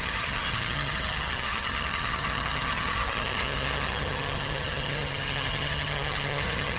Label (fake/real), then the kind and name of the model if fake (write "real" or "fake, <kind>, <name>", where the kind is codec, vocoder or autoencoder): fake, vocoder, HiFi-GAN